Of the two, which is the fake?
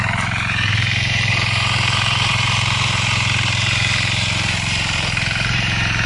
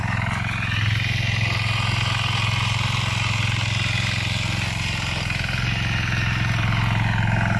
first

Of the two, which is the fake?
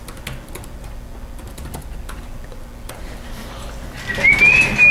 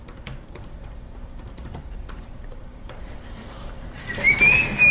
second